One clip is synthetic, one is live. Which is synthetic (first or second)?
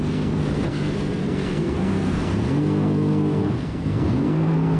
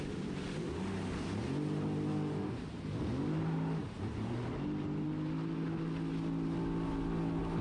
first